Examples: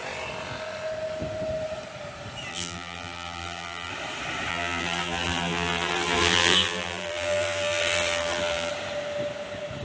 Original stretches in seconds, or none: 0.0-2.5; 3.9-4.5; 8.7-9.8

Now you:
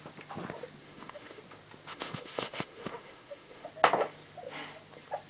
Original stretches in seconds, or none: 0.0-0.8; 1.4-1.9; 3.7-5.3

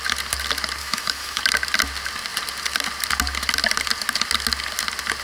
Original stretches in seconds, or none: 0.0-0.8; 1.4-5.2

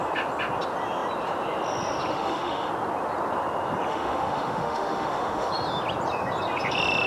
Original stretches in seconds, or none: 0.0-2.1; 2.7-3.9; 5.5-7.1

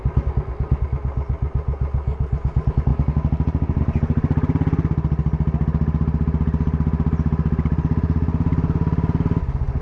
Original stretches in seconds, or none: 0.0-9.8